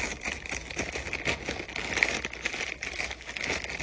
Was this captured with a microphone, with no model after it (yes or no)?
yes